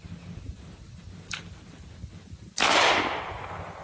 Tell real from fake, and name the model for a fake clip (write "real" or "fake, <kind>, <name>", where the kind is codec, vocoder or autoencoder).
real